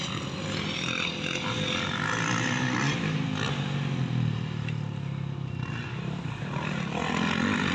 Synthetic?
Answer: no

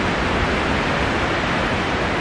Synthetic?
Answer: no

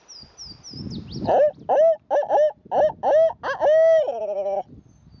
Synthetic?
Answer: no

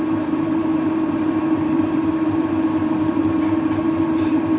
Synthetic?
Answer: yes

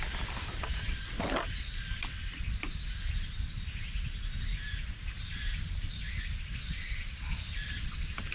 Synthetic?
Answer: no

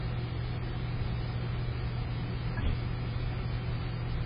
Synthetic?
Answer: no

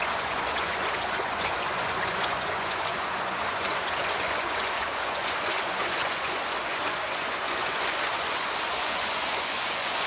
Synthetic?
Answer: yes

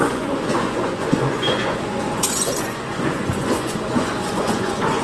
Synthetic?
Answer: yes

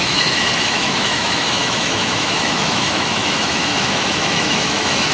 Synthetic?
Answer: yes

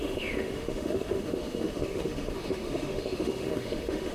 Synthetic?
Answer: yes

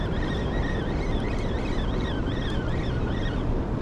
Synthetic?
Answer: no